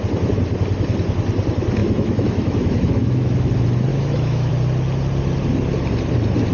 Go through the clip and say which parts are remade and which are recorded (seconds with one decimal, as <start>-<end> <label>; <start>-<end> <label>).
0.0-1.8 recorded; 1.8-3.5 remade; 3.5-3.9 recorded; 3.9-4.5 remade; 4.5-6.5 recorded